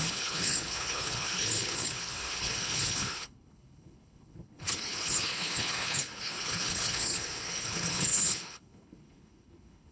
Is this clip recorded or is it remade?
remade